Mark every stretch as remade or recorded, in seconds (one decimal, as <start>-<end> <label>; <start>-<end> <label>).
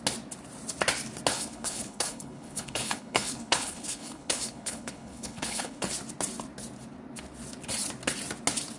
0.0-1.3 recorded; 1.3-5.9 remade; 5.9-8.8 recorded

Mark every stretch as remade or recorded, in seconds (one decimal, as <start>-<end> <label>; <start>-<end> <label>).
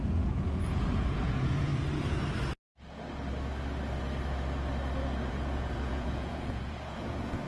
0.0-1.7 remade; 1.7-5.3 recorded; 5.3-7.5 remade